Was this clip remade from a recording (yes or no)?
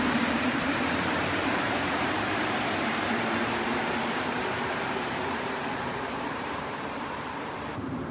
yes